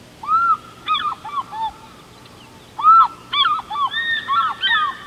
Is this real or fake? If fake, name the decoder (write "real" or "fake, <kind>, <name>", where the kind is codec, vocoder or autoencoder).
real